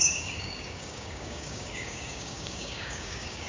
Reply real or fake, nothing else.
fake